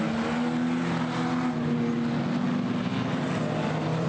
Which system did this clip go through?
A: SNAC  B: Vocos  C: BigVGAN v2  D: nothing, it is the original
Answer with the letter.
D